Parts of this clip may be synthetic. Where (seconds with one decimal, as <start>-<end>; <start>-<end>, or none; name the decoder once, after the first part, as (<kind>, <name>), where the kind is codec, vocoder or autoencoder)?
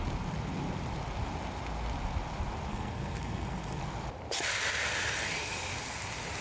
2.7-3.8 (codec, SNAC)